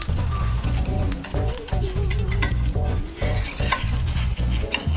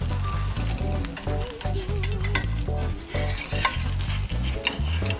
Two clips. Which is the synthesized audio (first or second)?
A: first